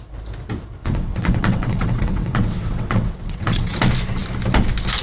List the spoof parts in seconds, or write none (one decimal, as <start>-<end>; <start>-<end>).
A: 0.8-3.8